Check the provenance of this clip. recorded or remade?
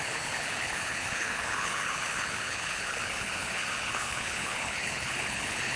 remade